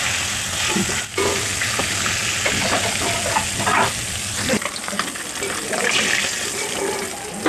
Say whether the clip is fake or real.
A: real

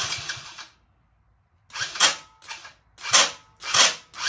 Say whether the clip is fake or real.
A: real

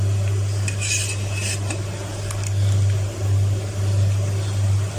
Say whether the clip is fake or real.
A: real